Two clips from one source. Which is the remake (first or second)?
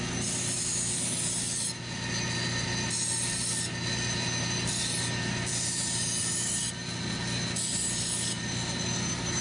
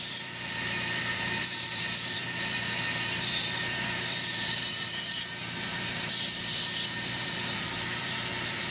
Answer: second